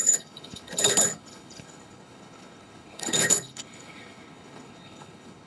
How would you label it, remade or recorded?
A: remade